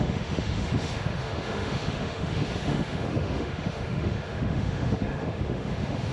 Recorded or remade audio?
remade